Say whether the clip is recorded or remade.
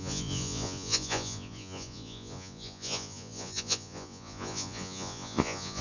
remade